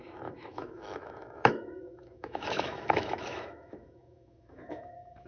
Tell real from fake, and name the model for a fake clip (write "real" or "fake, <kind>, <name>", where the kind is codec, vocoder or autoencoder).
fake, autoencoder, DAC-VAE